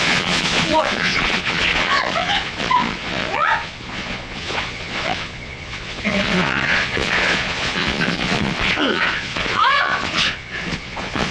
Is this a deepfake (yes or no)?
yes